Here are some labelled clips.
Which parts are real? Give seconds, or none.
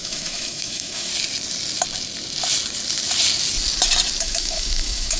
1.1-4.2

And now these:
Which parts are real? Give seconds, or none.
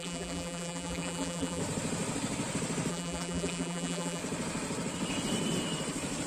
1.6-2.9; 4.2-6.3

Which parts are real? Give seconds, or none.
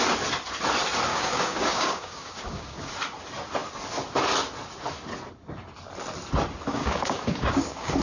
0.0-1.1; 2.9-6.7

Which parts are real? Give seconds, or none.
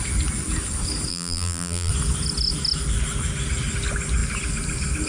0.0-1.1; 1.9-5.1